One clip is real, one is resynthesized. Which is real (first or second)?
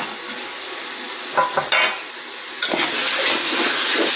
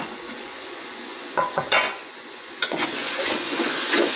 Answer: first